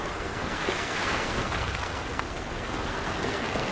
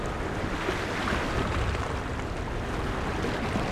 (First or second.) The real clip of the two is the second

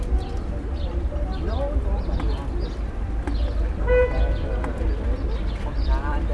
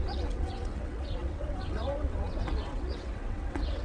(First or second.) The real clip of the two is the first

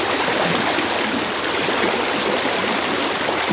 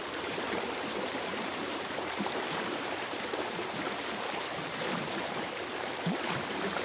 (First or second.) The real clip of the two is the first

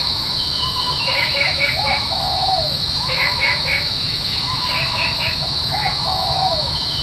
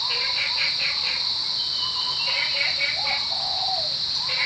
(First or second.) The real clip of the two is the second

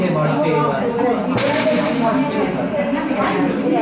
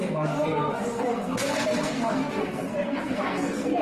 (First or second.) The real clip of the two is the first